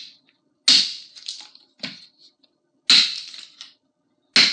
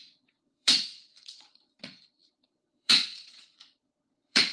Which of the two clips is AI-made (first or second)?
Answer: second